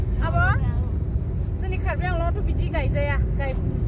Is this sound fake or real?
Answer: real